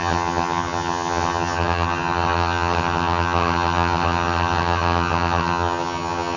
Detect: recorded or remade remade